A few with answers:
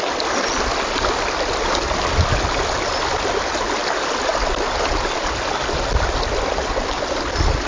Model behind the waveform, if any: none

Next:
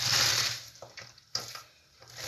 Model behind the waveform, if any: vocoder, BigVGAN v2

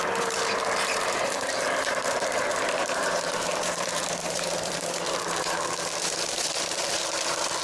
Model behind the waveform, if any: vocoder, BigVGAN v2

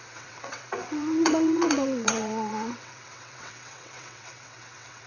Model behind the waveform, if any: vocoder, WaveNeXt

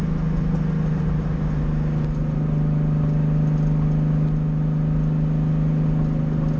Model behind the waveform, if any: none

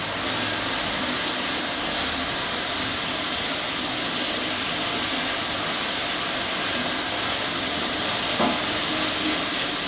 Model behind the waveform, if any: none